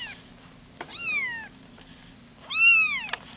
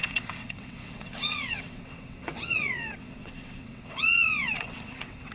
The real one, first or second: first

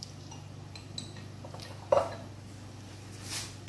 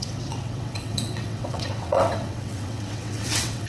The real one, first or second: first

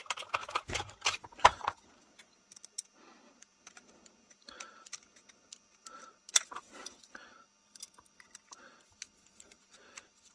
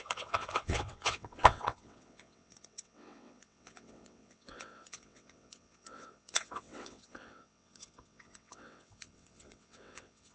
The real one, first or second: first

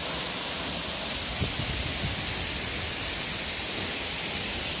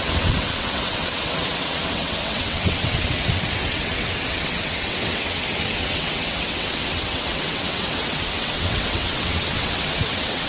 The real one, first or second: first